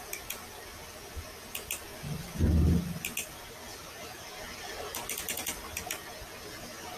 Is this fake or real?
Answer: real